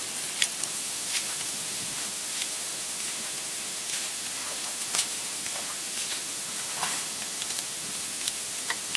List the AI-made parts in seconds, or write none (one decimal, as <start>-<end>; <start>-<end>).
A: 0.7-9.0

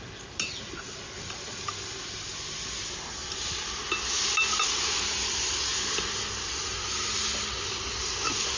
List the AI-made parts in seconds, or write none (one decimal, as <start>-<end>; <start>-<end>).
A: none

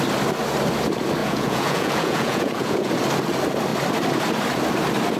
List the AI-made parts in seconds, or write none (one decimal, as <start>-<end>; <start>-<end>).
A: 1.2-2.9

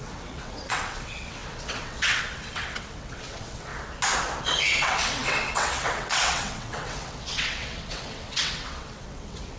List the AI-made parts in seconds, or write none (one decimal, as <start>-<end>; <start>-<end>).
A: 0.0-3.7; 4.4-9.6

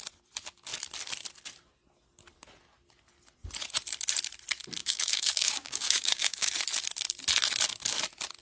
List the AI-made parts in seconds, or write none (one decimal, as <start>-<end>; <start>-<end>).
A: 4.8-6.5

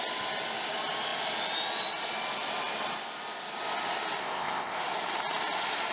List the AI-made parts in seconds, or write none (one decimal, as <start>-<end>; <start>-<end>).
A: 4.2-4.8

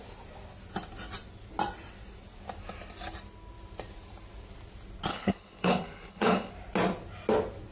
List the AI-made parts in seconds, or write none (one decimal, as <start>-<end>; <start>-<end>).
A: 5.1-6.5